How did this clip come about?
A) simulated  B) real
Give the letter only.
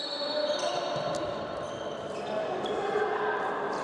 B